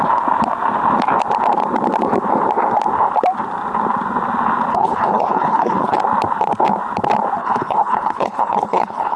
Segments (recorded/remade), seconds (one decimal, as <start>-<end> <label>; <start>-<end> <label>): 0.0-4.7 recorded; 4.7-6.0 remade; 6.0-7.4 recorded; 7.4-9.2 remade